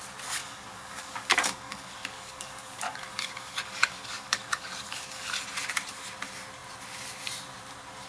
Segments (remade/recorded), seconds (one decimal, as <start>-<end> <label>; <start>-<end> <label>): 0.0-0.4 recorded; 0.4-5.3 remade; 5.3-8.1 recorded